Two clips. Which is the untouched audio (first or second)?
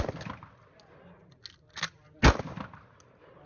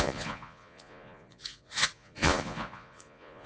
first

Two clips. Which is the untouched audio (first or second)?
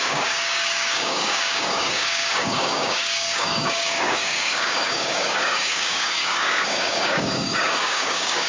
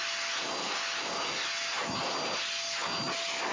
second